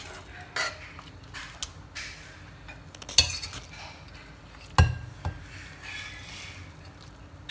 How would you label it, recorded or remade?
recorded